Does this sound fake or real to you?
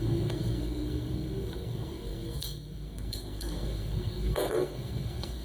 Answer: fake